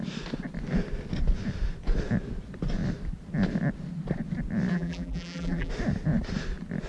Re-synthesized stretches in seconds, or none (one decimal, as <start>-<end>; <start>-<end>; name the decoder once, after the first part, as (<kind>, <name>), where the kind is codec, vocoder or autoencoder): 4.7-5.7 (vocoder, BigVGAN v2)